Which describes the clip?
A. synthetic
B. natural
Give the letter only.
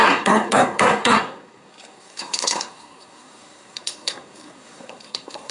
A